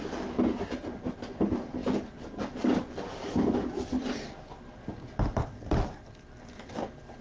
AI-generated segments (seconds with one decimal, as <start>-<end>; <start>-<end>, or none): 5.3-5.8